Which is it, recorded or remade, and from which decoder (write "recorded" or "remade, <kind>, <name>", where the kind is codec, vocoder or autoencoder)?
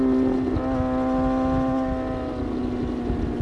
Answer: recorded